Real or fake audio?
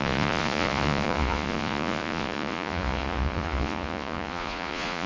fake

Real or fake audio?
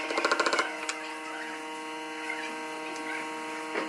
real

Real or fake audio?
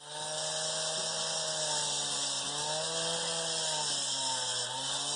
real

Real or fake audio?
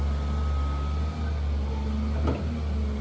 real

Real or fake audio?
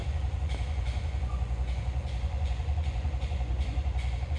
fake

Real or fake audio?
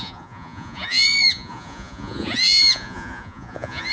fake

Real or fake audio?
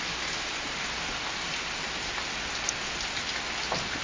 real